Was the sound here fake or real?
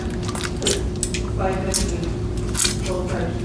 real